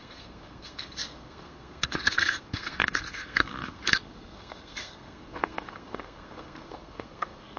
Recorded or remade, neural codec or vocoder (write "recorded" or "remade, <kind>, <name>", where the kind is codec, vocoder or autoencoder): remade, codec, SNAC